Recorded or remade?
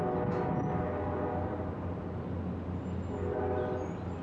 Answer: recorded